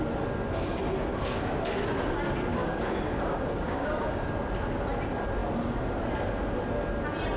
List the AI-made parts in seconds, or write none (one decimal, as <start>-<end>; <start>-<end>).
1.1-1.6; 2.5-4.3